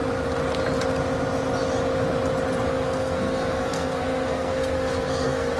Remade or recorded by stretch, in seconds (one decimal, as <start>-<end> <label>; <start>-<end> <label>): 0.0-2.7 recorded; 2.7-5.6 remade